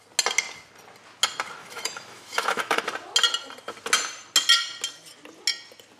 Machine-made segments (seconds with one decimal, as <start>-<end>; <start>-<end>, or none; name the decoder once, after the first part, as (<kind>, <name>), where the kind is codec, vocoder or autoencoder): 1.6-2.8 (autoencoder, DAC-VAE)